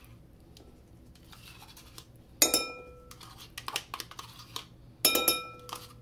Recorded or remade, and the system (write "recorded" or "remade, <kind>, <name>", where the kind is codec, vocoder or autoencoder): recorded